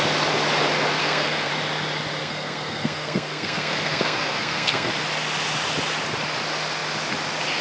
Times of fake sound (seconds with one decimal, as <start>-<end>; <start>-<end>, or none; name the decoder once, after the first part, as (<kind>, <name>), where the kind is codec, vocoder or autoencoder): 1.0-1.5 (codec, SNAC); 2.2-4.9